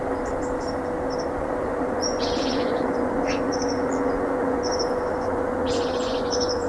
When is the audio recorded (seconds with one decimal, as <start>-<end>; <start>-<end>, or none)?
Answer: 0.0-1.3